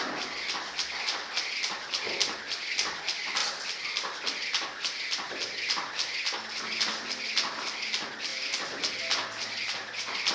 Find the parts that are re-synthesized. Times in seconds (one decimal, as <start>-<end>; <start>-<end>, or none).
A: none